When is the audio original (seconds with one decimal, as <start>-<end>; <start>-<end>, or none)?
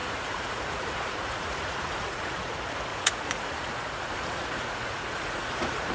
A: 2.5-2.9